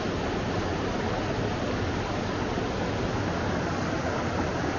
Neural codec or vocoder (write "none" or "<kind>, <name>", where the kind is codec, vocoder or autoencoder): none